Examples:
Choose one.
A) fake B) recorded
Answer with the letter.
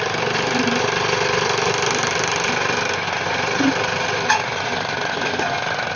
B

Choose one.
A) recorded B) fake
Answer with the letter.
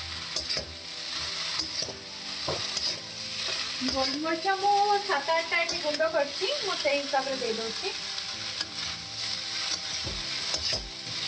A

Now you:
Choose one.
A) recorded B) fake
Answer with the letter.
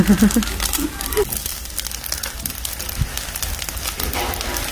A